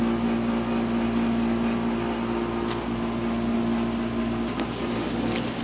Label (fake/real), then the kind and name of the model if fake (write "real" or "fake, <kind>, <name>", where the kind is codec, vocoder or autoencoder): real